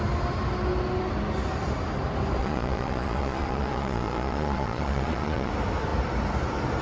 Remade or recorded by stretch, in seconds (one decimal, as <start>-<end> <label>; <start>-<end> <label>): 0.0-2.4 recorded; 2.4-5.5 remade; 5.5-6.8 recorded